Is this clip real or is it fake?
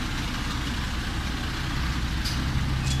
real